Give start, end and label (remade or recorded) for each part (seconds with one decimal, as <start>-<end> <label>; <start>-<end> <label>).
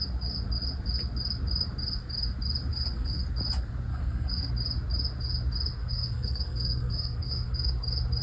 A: 0.0-2.7 recorded; 2.7-3.2 remade; 3.2-3.9 recorded; 3.9-4.5 remade; 4.5-5.8 recorded; 5.8-7.7 remade; 7.7-8.2 recorded